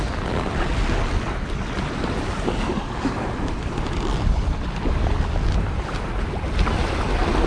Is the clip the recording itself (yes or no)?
yes